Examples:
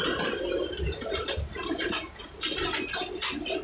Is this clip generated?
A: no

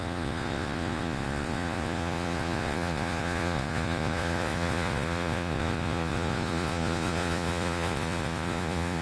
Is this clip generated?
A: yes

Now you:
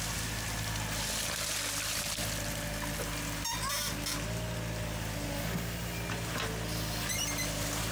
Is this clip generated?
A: no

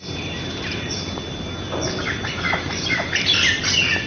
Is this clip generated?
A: no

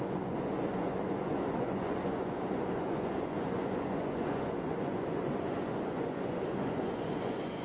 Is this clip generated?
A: yes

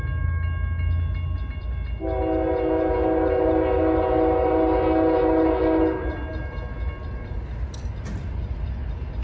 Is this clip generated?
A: no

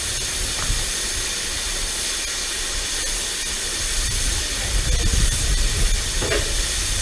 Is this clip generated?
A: no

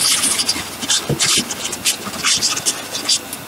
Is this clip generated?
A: no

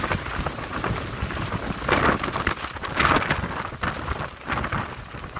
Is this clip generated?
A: no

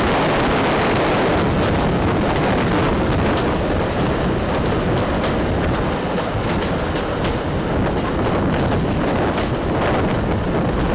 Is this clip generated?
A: no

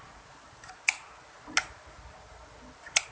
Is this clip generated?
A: no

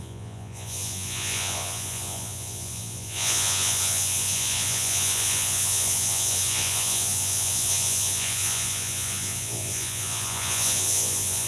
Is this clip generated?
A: yes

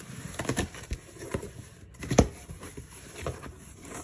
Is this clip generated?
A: no